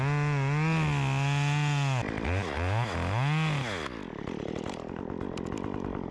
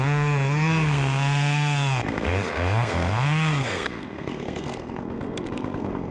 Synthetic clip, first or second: second